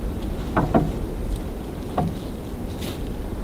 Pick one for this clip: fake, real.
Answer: real